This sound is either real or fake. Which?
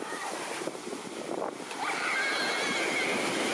real